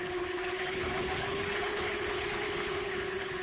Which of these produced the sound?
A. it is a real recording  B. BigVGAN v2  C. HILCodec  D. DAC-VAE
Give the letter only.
C